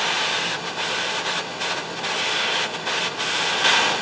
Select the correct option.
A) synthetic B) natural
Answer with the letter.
B